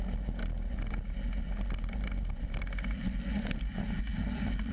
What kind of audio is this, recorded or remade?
recorded